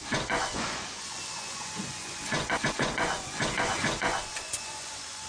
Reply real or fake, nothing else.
fake